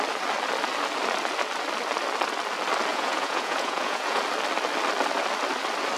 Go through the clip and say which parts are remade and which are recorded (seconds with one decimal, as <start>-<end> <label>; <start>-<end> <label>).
0.0-2.9 recorded; 2.9-4.2 remade; 4.2-6.0 recorded